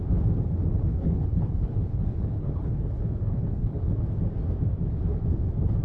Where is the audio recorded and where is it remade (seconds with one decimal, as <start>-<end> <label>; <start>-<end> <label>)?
0.0-0.7 recorded; 0.7-3.9 remade; 3.9-5.8 recorded